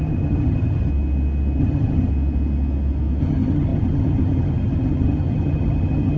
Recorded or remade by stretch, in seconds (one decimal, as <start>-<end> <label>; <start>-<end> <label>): 0.0-0.9 remade; 0.9-1.6 recorded; 1.6-2.1 remade; 2.1-3.2 recorded; 3.2-6.2 remade